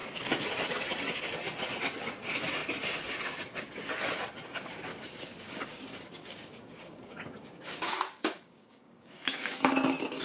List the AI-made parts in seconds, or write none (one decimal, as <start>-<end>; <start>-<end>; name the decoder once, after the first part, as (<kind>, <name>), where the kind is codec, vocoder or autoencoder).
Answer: 4.9-10.2 (codec, DAC)